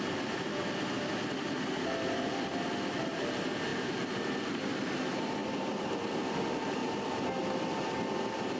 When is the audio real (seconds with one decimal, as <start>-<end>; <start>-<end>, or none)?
0.0-3.7; 4.7-6.8